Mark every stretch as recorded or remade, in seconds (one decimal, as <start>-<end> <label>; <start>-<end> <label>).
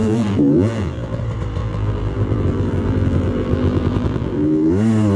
0.0-1.2 remade; 1.2-1.6 recorded; 1.6-4.7 remade; 4.7-5.2 recorded